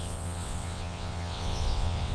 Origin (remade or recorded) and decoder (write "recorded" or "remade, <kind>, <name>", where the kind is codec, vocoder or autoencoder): remade, vocoder, WaveNeXt